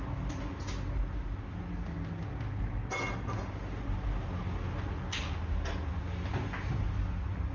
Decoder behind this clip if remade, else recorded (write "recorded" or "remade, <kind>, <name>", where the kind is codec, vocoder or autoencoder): recorded